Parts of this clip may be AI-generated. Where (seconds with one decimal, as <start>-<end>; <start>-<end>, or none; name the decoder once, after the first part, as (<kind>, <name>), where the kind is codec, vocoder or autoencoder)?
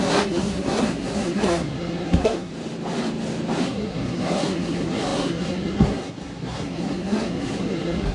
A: 0.0-2.5 (codec, SNAC); 3.6-8.1